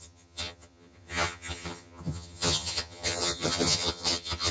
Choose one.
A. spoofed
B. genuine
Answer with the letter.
A